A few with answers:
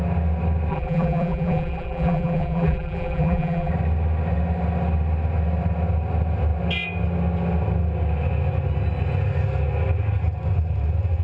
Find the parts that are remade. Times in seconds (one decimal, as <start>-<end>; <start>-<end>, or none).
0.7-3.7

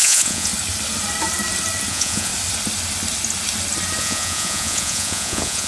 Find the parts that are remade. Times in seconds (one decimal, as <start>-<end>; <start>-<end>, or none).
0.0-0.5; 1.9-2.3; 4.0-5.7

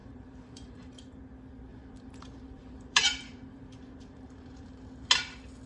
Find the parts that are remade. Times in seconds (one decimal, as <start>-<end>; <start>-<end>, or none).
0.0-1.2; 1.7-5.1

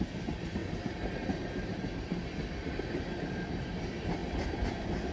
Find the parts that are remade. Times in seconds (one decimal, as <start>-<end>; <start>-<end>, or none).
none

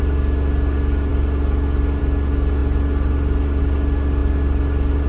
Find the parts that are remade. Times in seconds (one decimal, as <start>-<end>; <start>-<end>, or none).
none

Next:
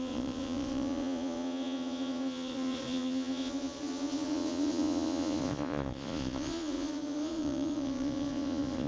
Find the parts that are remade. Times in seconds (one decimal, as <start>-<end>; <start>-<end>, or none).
0.0-8.9